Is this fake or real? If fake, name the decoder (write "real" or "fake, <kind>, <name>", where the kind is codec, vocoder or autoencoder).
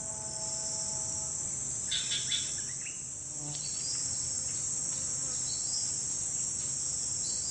real